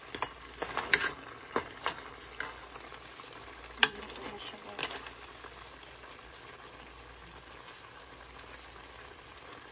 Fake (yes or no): no